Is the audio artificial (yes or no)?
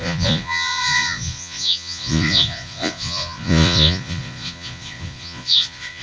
yes